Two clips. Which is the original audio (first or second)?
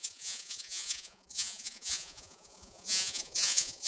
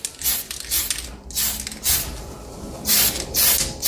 second